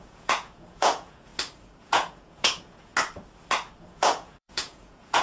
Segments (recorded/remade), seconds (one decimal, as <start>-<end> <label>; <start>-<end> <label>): 0.0-1.3 remade; 1.3-1.8 recorded; 1.8-2.9 remade; 2.9-3.8 recorded; 3.8-5.2 remade